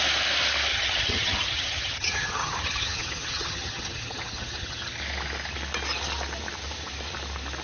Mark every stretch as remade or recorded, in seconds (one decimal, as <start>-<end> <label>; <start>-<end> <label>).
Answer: 0.0-0.7 recorded; 0.7-5.0 remade; 5.0-7.6 recorded